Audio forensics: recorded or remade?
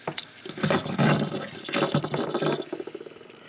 recorded